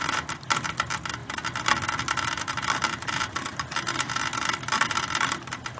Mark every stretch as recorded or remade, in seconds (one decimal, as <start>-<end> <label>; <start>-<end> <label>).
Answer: 0.0-5.8 recorded